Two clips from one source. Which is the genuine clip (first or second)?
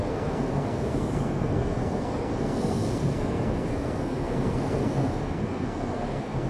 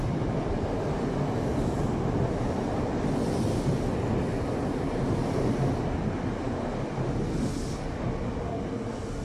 second